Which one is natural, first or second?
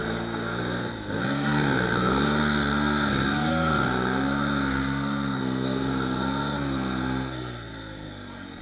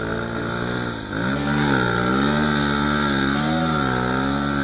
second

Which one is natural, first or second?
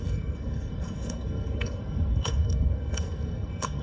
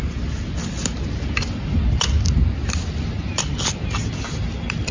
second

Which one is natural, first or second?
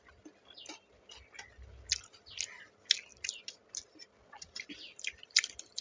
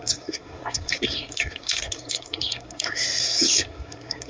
first